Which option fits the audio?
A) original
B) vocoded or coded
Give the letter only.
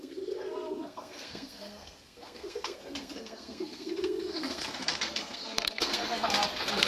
B